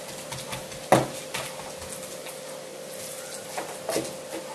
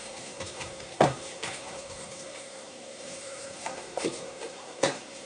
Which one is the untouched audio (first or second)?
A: first